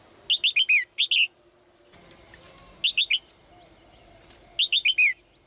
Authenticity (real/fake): real